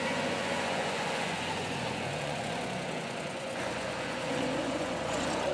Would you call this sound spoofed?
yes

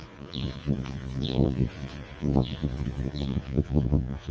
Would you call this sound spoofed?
yes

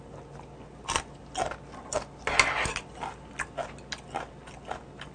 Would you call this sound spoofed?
no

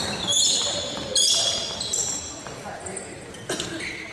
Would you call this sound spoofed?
no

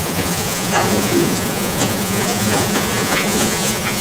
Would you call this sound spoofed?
yes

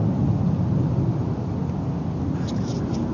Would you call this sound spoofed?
no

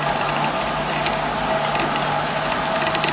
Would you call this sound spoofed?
no